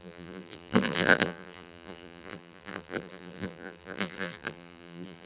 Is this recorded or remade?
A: remade